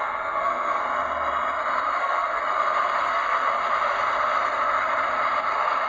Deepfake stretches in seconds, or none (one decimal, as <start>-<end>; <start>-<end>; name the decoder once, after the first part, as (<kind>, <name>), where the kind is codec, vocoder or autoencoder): 0.0-0.8 (codec, SNAC); 2.0-2.4; 3.0-3.5